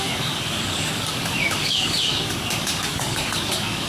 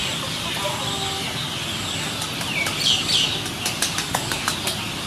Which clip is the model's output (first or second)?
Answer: first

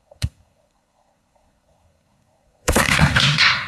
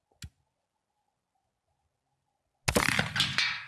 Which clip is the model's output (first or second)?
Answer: first